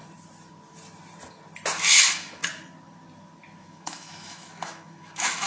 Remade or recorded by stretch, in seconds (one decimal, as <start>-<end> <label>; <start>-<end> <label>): 0.0-2.0 recorded; 2.0-2.4 remade; 2.4-3.6 recorded; 3.6-5.5 remade